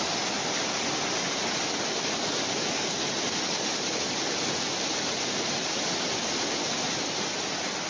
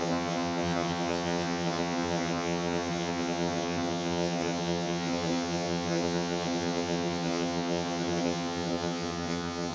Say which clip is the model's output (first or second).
second